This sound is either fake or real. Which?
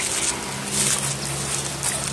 real